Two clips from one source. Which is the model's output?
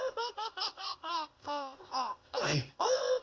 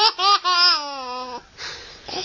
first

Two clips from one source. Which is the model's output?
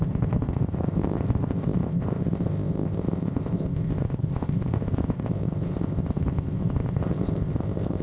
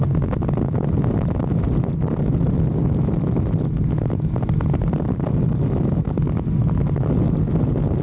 first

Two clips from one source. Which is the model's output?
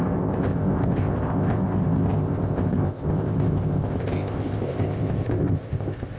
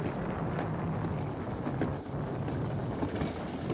first